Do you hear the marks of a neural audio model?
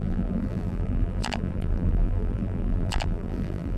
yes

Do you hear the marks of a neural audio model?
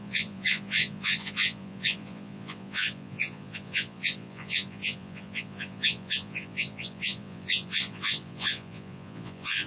yes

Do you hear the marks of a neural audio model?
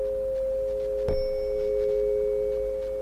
no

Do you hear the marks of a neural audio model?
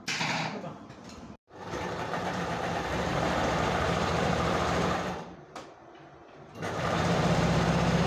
yes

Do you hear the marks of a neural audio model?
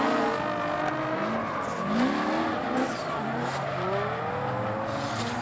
no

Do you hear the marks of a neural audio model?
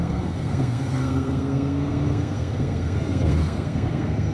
yes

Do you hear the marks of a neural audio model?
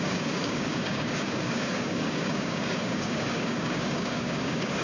yes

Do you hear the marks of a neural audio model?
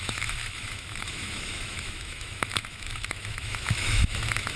yes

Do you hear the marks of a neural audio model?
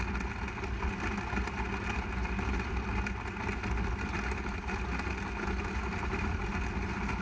no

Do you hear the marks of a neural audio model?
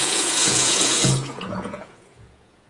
yes